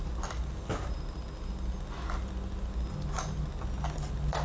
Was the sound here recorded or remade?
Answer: recorded